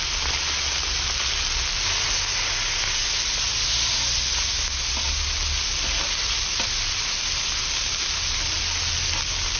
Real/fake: real